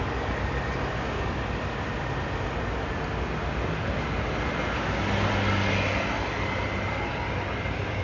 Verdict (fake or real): real